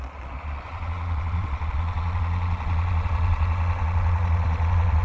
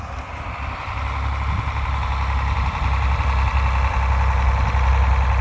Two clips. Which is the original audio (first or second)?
second